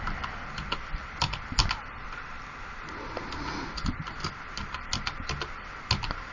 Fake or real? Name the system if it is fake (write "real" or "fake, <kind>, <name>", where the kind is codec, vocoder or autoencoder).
real